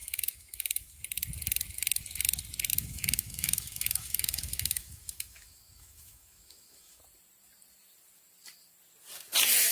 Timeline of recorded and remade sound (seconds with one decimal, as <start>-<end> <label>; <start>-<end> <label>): 0.0-1.0 remade; 1.0-2.7 recorded; 2.7-7.0 remade; 7.0-9.7 recorded